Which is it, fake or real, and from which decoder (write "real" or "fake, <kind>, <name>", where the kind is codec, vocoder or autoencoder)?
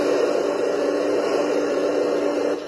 real